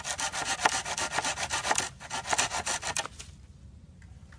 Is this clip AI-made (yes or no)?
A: no